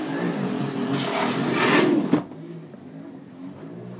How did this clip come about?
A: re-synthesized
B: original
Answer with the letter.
B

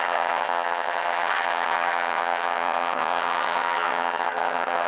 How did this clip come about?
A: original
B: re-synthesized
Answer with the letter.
B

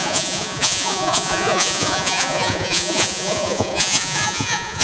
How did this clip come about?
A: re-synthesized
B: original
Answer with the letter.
A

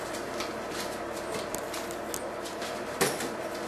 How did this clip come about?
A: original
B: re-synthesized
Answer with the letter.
A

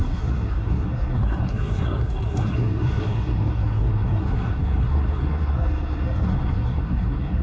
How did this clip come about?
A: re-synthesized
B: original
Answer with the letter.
A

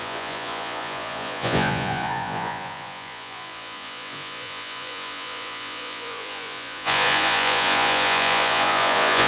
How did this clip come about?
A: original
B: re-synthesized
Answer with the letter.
B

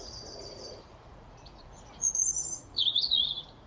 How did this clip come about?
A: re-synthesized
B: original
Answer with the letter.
A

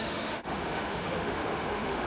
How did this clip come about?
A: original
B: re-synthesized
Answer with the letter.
B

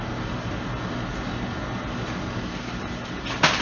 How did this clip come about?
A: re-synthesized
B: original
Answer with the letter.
B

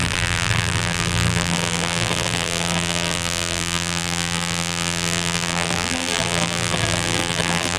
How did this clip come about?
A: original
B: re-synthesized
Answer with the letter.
B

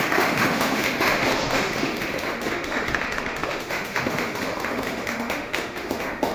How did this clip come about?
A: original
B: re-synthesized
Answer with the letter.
B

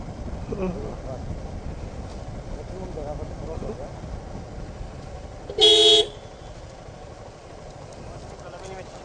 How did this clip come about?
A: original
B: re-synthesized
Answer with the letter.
A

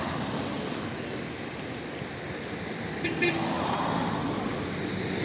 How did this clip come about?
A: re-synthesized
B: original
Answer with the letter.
B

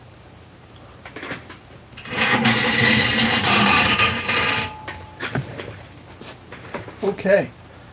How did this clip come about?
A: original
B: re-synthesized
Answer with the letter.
B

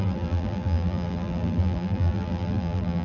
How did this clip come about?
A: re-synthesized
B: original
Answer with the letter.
A